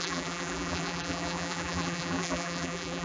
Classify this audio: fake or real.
fake